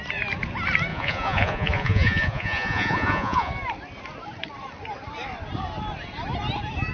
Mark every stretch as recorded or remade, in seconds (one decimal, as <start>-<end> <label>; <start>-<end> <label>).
0.0-0.9 recorded; 0.9-3.5 remade; 3.5-6.9 recorded